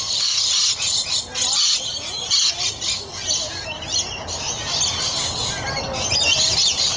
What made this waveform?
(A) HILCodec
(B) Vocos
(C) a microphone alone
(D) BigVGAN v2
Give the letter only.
C